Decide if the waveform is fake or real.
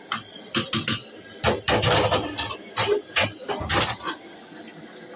real